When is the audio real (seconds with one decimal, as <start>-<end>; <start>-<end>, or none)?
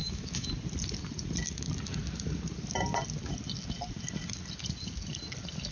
0.5-5.7